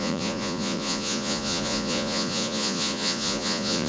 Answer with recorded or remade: remade